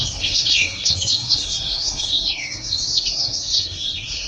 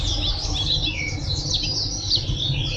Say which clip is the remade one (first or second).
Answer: first